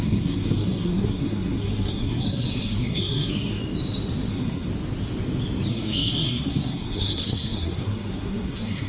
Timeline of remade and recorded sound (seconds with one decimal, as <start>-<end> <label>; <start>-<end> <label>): 0.0-3.6 remade; 3.6-4.3 recorded; 4.3-4.7 remade; 4.7-5.7 recorded; 5.7-8.9 remade